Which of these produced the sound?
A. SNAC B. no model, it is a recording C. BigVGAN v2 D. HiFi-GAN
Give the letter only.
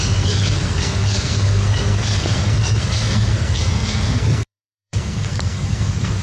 A